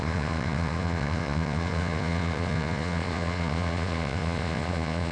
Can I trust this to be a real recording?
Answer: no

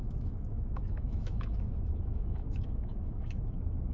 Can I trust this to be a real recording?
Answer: no